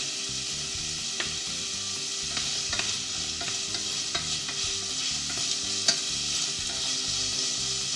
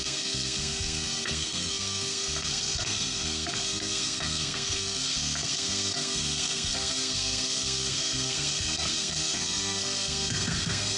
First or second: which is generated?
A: second